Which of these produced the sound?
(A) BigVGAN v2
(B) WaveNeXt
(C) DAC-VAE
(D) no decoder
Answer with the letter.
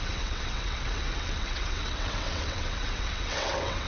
B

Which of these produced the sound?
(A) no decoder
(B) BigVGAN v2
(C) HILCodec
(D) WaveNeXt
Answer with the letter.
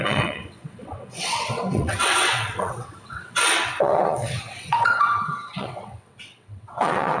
D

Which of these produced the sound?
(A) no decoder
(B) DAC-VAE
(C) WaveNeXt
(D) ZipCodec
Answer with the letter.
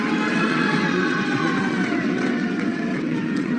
C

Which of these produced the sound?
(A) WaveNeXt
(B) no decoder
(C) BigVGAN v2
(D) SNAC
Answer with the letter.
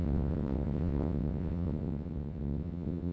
A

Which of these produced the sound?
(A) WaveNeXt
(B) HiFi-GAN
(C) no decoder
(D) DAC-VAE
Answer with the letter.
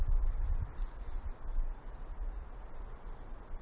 C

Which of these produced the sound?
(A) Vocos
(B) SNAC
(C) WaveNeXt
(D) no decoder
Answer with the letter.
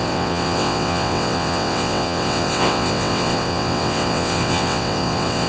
C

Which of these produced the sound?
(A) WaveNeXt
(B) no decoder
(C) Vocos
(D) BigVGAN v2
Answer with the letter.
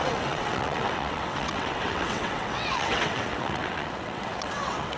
A